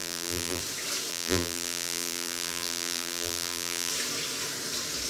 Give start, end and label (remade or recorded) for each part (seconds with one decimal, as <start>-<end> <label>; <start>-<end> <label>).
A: 0.0-0.6 remade; 0.6-1.1 recorded; 1.1-3.9 remade; 3.9-5.1 recorded